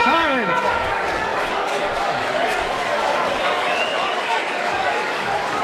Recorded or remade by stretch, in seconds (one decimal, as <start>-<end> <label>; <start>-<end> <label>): 0.0-5.6 remade